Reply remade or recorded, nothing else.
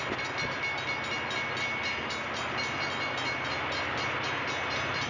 recorded